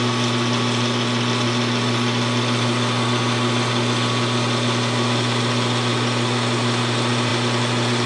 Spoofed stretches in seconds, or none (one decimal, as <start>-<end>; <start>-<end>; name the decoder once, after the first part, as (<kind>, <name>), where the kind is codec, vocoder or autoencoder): none

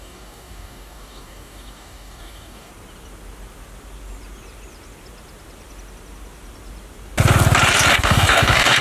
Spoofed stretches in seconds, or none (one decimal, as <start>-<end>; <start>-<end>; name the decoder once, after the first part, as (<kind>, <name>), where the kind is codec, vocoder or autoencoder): 0.0-2.7 (codec, DAC); 8.0-8.8

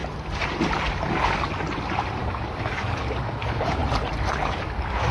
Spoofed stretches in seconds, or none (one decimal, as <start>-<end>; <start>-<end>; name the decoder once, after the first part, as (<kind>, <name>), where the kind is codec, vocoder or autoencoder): 2.2-3.8 (codec, DAC); 4.4-5.1

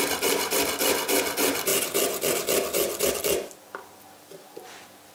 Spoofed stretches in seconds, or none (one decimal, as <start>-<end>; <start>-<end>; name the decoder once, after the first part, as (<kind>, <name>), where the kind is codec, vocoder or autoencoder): none

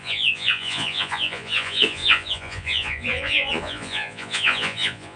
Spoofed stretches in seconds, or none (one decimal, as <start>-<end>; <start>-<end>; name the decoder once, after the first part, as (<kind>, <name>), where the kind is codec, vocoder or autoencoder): 0.0-5.2 (vocoder, Vocos)

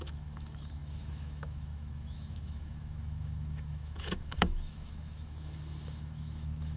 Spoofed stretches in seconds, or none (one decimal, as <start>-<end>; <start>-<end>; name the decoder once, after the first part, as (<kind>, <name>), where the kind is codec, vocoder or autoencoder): 0.0-6.8 (autoencoder, DAC-VAE)

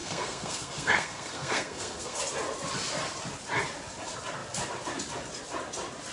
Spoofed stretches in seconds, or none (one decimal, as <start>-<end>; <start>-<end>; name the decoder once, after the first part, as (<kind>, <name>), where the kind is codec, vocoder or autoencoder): 0.0-2.2 (codec, SNAC)

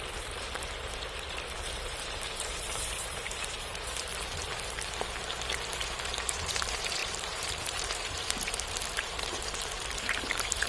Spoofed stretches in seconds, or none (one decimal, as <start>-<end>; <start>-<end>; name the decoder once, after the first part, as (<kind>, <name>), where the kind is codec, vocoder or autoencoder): 0.0-4.1 (vocoder, BigVGAN v2); 5.8-10.7